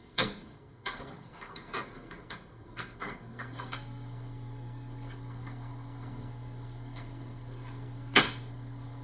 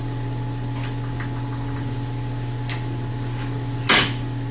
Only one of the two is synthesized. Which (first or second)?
first